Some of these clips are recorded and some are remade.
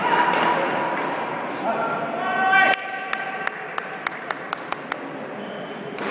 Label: recorded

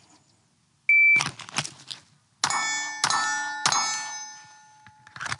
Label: recorded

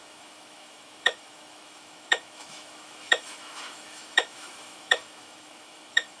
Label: remade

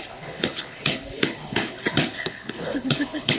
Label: remade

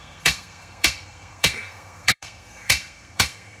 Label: remade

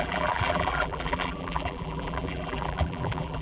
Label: remade